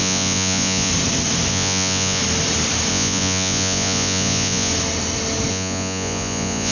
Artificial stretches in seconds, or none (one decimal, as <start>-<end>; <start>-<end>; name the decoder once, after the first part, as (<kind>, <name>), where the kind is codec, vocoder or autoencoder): 0.0-0.9 (vocoder, Vocos); 1.5-2.2; 2.9-4.7; 5.5-6.7